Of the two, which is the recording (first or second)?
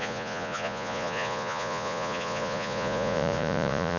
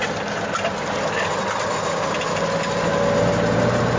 second